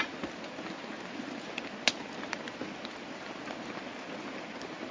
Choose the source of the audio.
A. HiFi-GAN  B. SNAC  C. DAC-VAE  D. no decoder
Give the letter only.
D